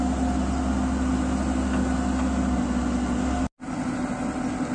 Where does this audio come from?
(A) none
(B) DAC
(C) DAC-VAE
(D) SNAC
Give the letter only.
A